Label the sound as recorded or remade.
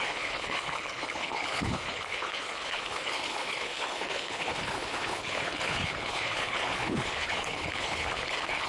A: remade